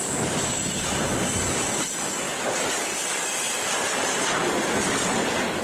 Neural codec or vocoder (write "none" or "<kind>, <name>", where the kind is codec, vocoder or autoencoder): none